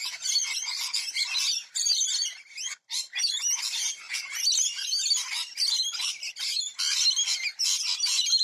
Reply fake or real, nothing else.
real